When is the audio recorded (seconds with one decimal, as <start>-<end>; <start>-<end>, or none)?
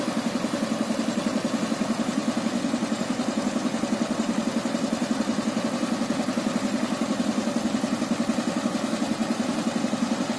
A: 0.0-9.2; 9.8-10.4